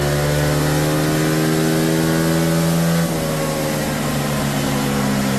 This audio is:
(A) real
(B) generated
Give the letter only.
A